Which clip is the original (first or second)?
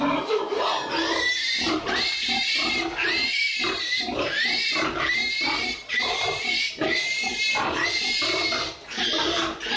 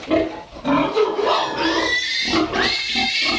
second